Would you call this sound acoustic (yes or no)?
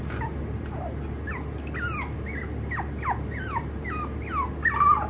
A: yes